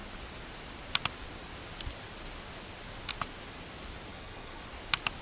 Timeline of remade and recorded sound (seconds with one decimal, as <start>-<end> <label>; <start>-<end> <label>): 0.0-4.1 recorded; 4.1-4.6 remade; 4.6-5.2 recorded